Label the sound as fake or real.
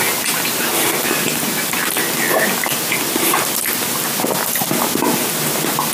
real